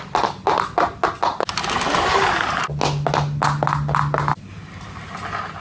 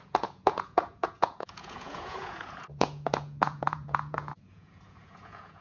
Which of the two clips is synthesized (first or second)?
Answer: second